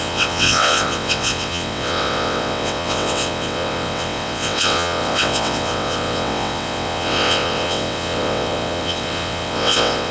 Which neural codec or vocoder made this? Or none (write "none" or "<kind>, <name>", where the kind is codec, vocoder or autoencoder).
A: vocoder, WaveNeXt